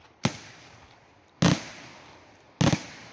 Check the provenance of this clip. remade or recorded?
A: recorded